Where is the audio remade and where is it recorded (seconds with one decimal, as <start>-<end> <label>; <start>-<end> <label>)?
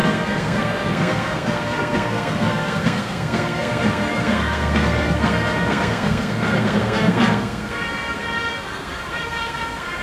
0.0-10.0 remade